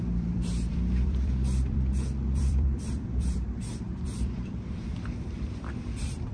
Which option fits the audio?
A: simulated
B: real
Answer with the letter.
A